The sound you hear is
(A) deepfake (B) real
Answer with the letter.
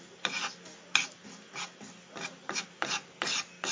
B